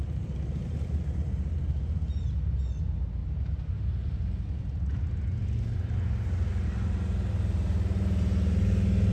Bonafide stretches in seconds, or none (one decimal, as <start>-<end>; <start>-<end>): 0.0-9.1